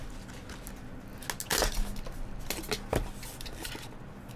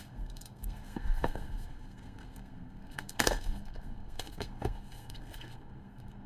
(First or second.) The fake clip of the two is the second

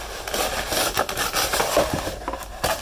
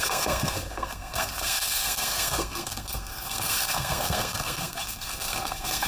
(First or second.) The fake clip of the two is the second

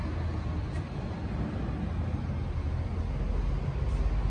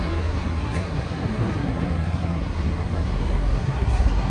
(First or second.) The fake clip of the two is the second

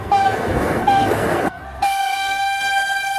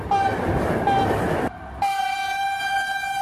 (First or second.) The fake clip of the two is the first